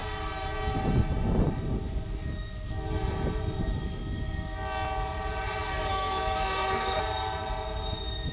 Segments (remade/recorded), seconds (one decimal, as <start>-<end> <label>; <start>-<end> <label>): 0.0-5.7 recorded; 5.7-7.0 remade; 7.0-8.3 recorded